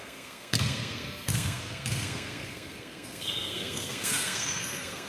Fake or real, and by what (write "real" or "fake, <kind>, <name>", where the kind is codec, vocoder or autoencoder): fake, codec, SNAC